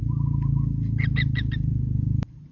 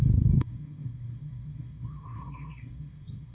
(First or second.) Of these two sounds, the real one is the first